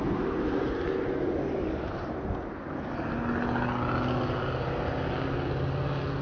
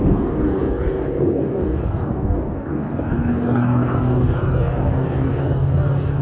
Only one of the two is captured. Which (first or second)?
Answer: first